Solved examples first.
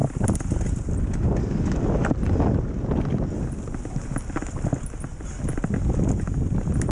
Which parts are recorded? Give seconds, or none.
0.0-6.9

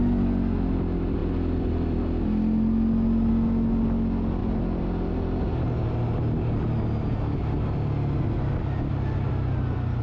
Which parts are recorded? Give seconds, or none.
0.0-10.0

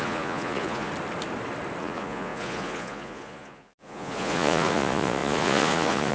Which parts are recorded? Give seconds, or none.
0.9-1.8

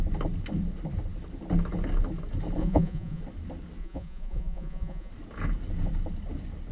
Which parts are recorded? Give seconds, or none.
0.0-2.6; 3.2-3.8; 5.1-6.7

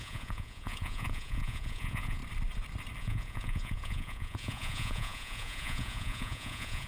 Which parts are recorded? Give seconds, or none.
2.2-3.0